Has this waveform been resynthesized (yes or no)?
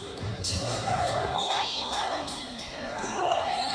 yes